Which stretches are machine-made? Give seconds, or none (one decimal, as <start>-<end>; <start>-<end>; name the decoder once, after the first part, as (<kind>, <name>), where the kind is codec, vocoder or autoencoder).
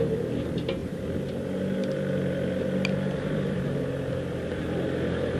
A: 0.0-0.8 (vocoder, BigVGAN v2); 1.3-5.4